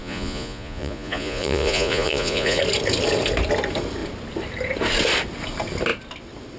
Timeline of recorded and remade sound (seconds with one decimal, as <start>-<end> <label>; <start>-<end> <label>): 0.0-2.6 remade; 2.6-6.6 recorded